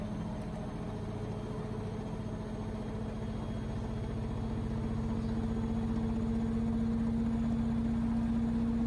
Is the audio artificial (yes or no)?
no